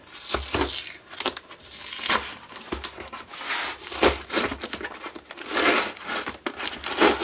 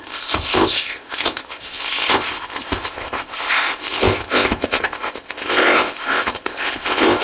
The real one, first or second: first